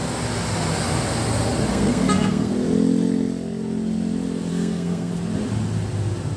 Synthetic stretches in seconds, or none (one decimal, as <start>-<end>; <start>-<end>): 1.7-2.5; 4.5-5.1